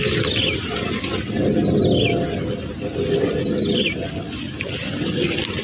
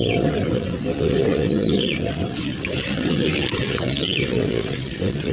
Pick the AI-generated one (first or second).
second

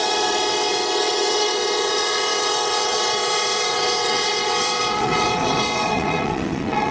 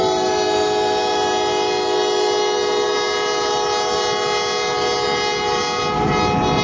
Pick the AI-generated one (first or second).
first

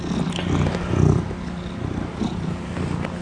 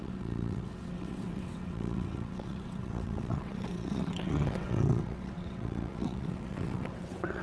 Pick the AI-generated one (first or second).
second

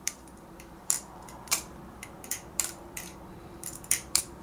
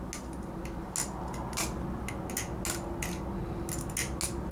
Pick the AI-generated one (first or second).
first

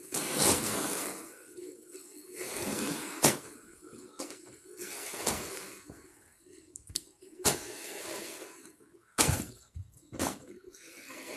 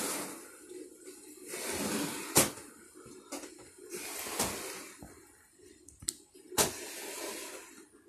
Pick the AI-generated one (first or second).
first